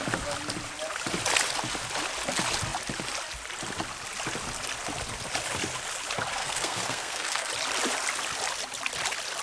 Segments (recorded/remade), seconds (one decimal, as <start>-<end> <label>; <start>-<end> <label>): 0.0-6.4 recorded; 6.4-7.5 remade; 7.5-9.4 recorded